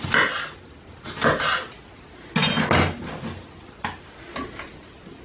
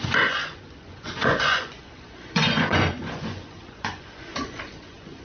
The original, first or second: first